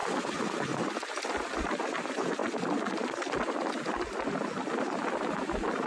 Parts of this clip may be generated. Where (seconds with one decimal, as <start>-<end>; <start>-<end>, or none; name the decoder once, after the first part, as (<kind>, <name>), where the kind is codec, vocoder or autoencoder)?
1.1-2.4 (vocoder, BigVGAN v2)